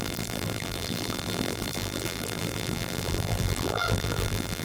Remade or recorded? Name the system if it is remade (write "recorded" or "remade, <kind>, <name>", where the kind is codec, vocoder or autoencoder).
remade, vocoder, BigVGAN v2